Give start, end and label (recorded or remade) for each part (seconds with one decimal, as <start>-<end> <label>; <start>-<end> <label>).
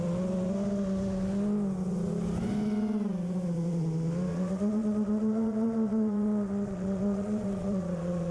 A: 0.0-4.3 recorded; 4.3-8.3 remade